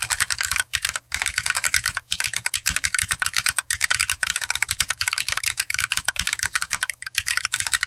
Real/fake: fake